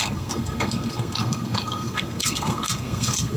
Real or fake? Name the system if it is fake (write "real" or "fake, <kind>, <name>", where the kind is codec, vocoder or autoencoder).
fake, codec, SNAC